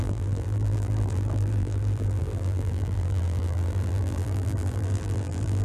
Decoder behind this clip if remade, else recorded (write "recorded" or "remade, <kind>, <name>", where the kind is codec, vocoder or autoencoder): remade, vocoder, BigVGAN v2